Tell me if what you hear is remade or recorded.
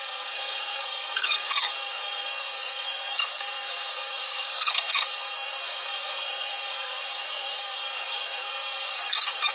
remade